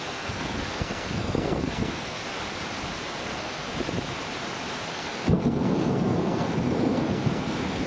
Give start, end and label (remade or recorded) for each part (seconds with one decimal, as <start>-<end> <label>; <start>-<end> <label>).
0.0-2.2 remade; 2.2-3.2 recorded; 3.2-3.7 remade; 3.7-4.9 recorded; 4.9-7.9 remade

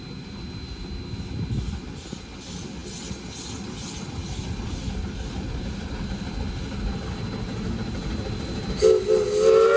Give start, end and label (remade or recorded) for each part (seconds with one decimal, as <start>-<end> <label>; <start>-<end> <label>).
0.0-9.8 recorded